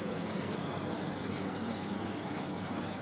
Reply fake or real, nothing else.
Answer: fake